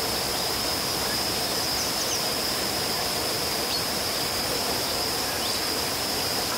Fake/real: fake